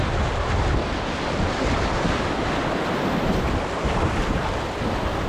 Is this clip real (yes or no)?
yes